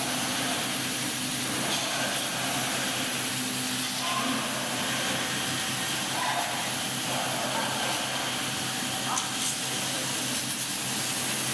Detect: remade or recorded recorded